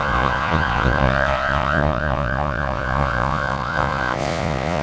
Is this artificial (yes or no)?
yes